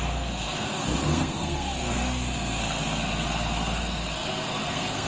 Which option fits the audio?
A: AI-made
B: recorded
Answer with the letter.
A